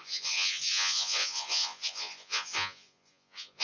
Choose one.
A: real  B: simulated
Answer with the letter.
B